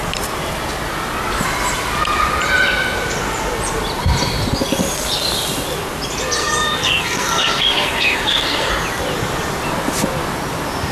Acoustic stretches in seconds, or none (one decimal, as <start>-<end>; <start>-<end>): 0.0-6.4; 8.7-10.9